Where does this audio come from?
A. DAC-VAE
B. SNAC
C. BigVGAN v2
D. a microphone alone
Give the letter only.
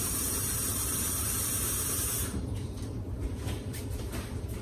C